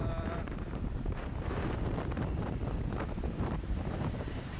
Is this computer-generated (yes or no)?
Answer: yes